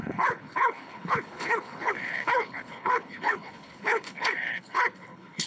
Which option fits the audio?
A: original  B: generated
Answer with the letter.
B